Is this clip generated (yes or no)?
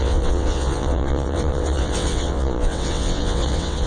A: yes